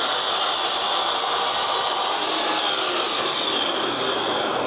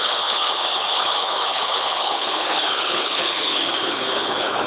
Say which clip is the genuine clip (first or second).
first